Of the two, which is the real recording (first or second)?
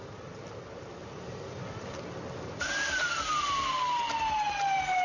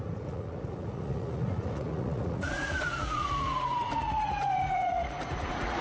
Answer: first